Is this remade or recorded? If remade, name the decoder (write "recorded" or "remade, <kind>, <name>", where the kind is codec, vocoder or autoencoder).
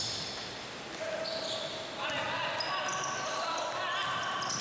recorded